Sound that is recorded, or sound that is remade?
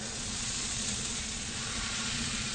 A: remade